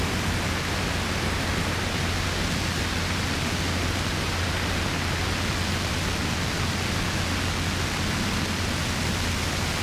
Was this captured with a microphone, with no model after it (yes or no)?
yes